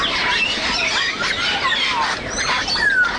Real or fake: real